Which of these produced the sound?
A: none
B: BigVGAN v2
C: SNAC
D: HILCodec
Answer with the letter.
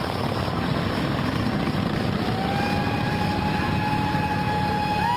A